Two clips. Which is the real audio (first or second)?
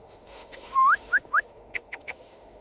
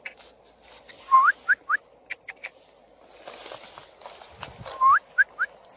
second